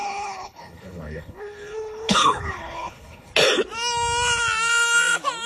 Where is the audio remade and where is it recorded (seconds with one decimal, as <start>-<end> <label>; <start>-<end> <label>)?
0.0-3.3 remade; 3.3-5.5 recorded